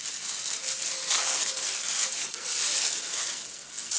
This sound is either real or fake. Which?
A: fake